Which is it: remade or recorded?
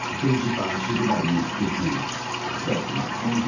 recorded